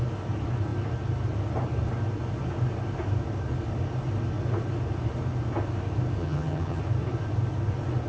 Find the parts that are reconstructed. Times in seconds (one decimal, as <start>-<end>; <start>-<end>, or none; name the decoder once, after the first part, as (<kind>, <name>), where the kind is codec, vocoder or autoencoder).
6.2-6.8 (vocoder, HiFi-GAN)